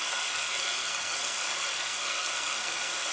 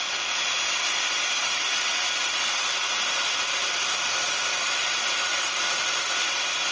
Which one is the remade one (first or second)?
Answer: first